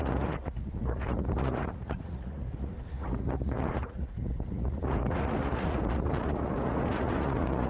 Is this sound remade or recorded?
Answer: remade